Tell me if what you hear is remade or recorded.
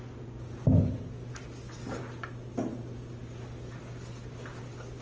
recorded